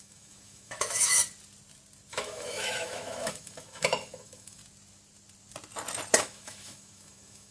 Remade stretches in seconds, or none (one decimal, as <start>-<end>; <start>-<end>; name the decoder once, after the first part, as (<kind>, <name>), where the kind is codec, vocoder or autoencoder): 0.0-1.2 (autoencoder, DAC-VAE); 2.1-4.6; 6.2-7.5